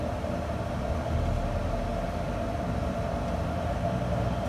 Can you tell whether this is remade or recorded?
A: recorded